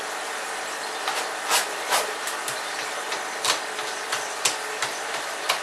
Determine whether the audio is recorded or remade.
recorded